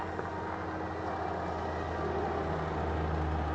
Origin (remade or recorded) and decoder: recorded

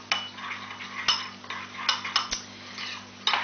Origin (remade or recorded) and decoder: recorded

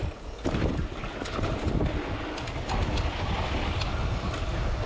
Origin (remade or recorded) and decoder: recorded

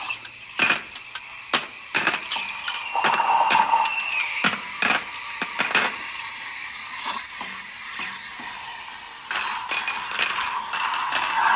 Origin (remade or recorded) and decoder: recorded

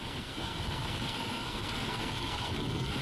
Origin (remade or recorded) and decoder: remade, codec, SNAC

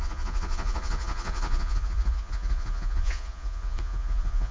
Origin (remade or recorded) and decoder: remade, vocoder, Vocos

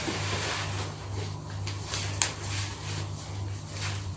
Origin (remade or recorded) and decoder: recorded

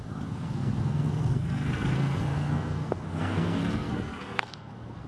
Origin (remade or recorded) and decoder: remade, codec, SNAC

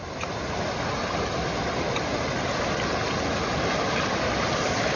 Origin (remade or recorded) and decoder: recorded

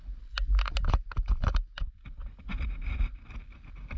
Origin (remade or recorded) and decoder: recorded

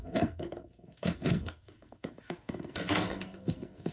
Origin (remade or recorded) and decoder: remade, codec, SNAC